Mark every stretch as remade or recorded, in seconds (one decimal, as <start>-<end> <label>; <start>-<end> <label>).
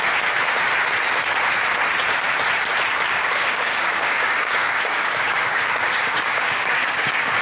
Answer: 0.0-3.1 recorded; 3.1-7.4 remade